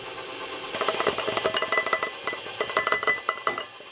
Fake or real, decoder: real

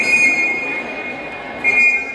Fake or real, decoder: real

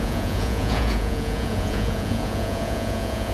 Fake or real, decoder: fake, vocoder, Vocos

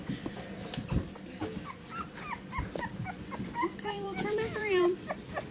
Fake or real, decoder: fake, vocoder, BigVGAN v2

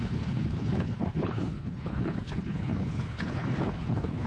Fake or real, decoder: fake, codec, HILCodec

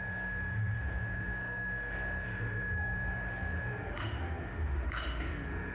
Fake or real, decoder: fake, autoencoder, DAC-VAE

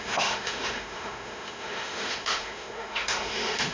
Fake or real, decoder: fake, autoencoder, DAC-VAE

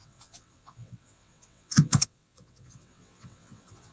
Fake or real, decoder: fake, vocoder, WaveNeXt